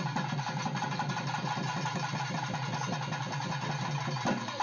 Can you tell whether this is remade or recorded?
recorded